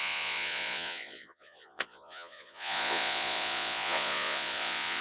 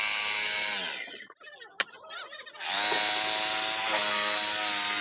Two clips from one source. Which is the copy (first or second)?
first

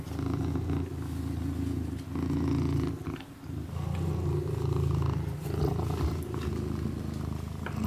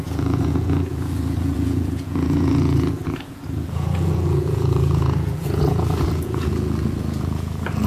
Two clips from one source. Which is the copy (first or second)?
second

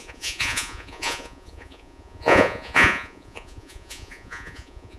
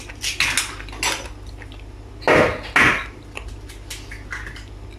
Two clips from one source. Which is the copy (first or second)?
first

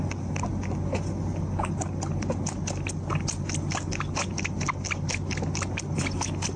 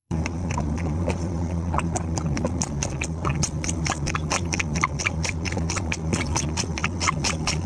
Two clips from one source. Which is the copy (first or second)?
second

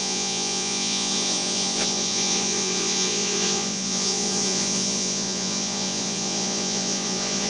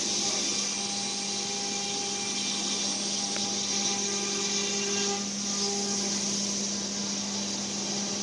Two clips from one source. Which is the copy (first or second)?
first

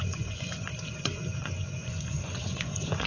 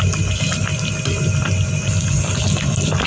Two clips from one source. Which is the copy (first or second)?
first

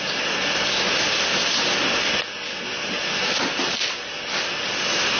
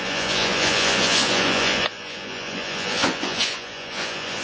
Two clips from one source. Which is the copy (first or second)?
second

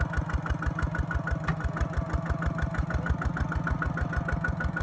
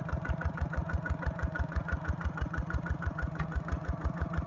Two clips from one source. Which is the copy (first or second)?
second